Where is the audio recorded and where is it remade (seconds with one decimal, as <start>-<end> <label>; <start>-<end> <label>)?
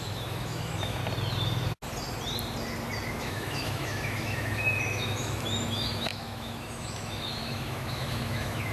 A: 0.0-1.0 remade; 1.0-3.1 recorded; 3.1-8.7 remade